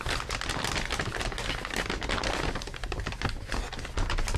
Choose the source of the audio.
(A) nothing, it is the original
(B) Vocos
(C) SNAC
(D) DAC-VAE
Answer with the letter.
A